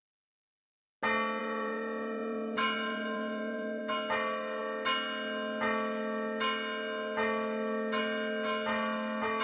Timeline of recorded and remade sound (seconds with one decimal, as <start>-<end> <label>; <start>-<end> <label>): 0.0-1.4 recorded; 1.4-3.8 remade; 3.8-9.4 recorded